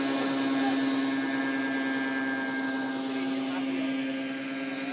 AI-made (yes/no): no